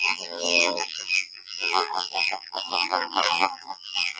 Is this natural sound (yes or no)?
no